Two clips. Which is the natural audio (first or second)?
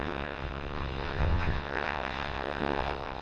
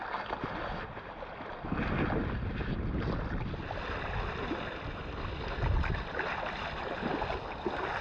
second